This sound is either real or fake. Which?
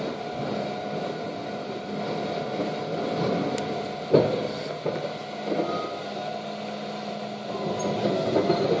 real